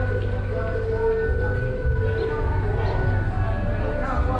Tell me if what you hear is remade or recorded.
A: recorded